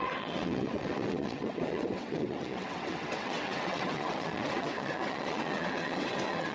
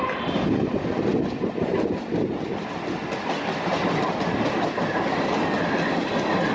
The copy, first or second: first